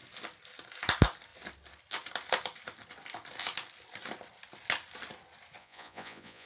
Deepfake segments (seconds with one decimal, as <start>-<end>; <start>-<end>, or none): 5.6-6.5